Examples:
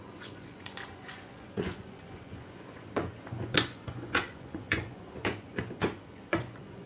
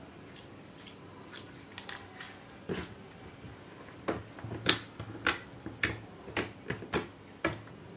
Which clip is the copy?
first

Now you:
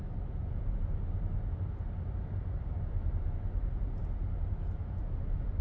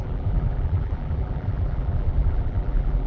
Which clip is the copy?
second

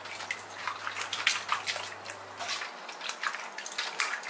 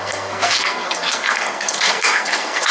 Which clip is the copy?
second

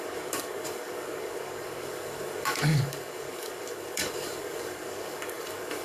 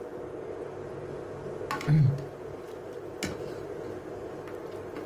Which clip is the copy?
first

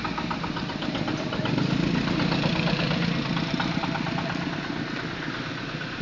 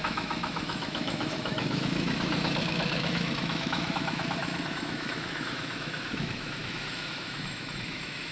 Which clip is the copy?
second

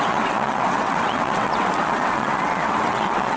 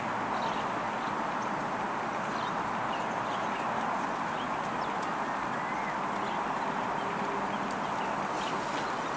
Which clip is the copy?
first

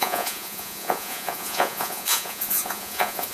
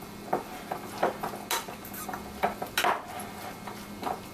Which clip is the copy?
first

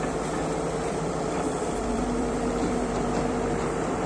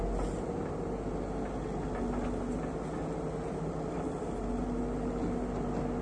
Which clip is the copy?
first